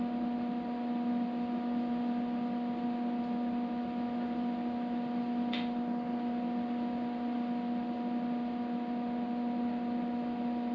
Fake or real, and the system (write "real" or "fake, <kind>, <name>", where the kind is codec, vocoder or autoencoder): real